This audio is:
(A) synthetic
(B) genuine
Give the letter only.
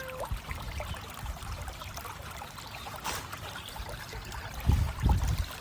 B